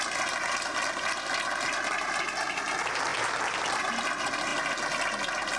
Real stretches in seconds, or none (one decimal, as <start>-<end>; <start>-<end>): 0.0-5.6